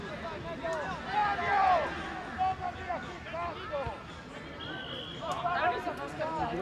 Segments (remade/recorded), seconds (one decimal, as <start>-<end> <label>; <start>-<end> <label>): 0.0-6.6 recorded